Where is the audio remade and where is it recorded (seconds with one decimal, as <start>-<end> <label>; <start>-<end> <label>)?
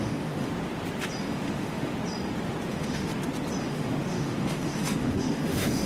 0.0-0.5 remade; 0.5-1.2 recorded; 1.2-1.9 remade; 1.9-2.7 recorded; 2.7-3.1 remade; 3.1-3.6 recorded; 3.6-5.9 remade